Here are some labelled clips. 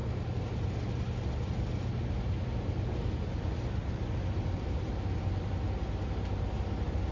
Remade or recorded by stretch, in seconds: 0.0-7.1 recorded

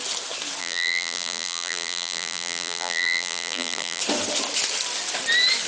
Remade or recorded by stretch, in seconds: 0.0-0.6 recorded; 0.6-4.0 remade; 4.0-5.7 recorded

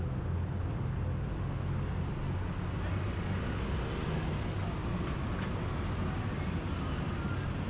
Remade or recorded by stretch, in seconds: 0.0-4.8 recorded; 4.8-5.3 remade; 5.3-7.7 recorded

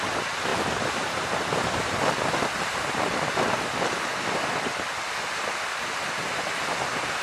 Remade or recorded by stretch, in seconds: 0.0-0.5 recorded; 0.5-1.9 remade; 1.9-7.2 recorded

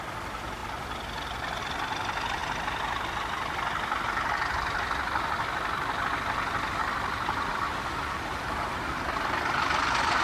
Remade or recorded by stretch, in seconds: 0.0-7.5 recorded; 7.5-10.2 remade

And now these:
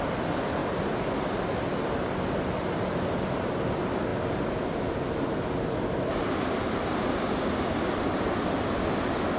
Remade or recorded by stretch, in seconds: 0.0-9.4 recorded

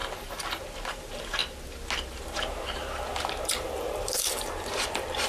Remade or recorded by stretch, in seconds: 0.0-0.9 recorded; 0.9-1.4 remade; 1.4-2.1 recorded; 2.1-5.3 remade

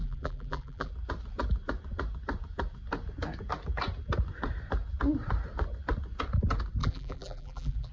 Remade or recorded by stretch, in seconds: 0.0-0.9 remade; 0.9-6.8 recorded; 6.8-7.9 remade